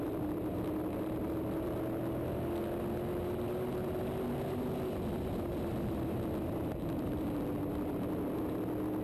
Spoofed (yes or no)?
no